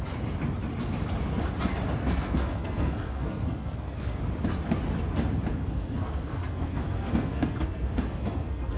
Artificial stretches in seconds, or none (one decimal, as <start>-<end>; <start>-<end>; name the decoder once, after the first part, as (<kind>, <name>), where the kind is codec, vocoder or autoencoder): 2.0-4.2 (codec, SNAC); 5.5-8.8